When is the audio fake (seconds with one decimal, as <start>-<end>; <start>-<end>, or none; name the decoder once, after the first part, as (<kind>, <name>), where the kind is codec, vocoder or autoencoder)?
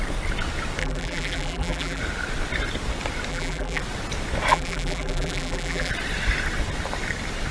0.8-2.0 (vocoder, BigVGAN v2); 3.3-3.8; 4.5-5.9